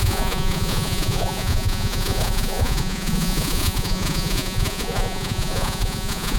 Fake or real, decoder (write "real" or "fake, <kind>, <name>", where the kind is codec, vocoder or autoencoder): fake, vocoder, Vocos